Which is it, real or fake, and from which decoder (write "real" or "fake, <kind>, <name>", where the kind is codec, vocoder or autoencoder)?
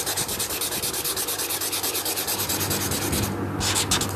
real